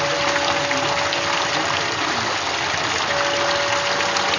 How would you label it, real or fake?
real